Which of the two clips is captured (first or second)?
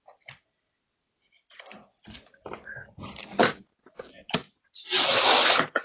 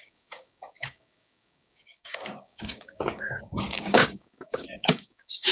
first